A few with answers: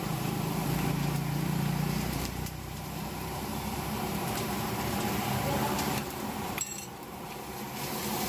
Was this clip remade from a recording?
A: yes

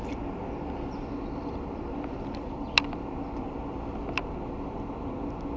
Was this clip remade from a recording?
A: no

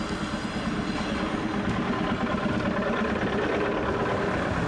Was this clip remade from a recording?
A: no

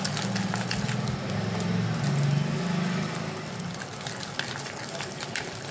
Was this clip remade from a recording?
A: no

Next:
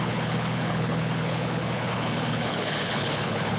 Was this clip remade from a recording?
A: yes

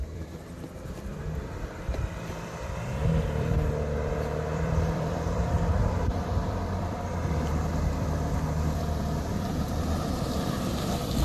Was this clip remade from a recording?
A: yes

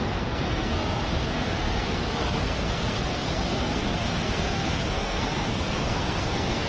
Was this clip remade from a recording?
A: yes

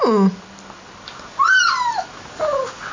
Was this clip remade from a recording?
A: no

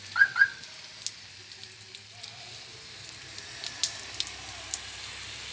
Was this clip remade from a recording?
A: no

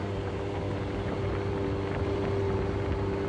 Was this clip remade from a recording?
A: no